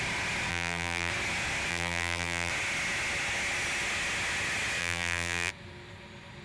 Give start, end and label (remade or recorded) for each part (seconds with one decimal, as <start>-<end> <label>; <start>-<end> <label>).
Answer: 0.0-0.5 recorded; 0.5-1.1 remade; 1.1-1.7 recorded; 1.7-2.5 remade; 2.5-4.8 recorded; 4.8-5.5 remade; 5.5-6.4 recorded